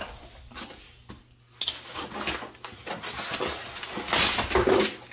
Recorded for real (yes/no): yes